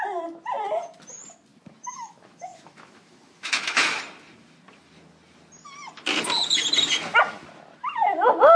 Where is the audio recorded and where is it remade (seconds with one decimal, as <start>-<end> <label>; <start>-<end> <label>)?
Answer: 0.0-1.5 recorded; 1.5-4.0 remade; 4.0-8.6 recorded